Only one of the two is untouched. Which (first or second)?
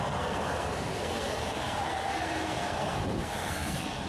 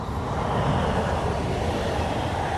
second